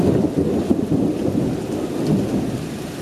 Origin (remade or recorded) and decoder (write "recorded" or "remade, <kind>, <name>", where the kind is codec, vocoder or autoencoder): recorded